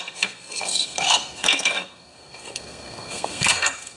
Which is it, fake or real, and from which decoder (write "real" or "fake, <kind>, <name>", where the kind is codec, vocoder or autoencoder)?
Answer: fake, codec, SNAC